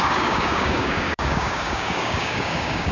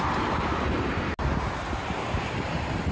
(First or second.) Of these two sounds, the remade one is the first